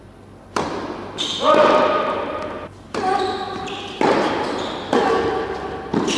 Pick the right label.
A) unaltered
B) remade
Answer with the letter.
A